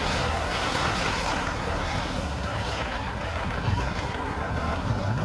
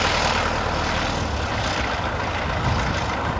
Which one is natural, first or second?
second